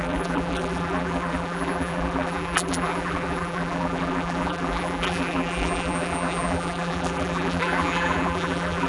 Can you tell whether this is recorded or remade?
remade